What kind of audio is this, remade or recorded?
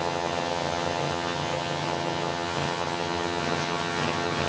remade